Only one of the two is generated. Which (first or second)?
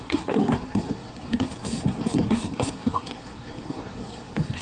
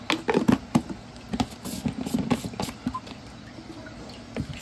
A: first